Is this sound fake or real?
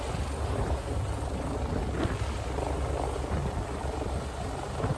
real